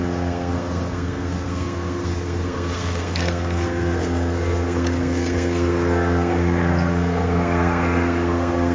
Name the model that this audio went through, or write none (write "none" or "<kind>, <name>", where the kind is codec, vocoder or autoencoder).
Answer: codec, SNAC